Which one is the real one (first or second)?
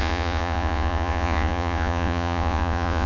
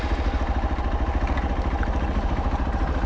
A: second